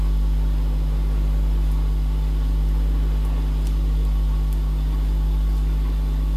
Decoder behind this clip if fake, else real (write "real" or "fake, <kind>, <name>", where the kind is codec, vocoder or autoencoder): real